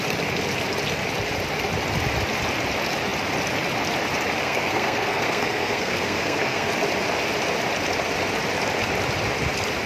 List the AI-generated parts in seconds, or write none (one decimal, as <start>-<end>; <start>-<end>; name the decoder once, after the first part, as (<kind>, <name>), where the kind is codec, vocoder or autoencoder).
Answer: 4.4-6.7 (codec, SNAC)